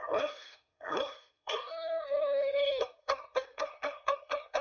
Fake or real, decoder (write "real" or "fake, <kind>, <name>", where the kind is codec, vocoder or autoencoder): fake, codec, SNAC